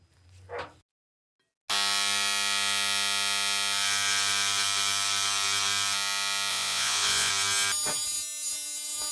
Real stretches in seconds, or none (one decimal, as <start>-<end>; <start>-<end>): 0.0-6.5; 7.3-9.1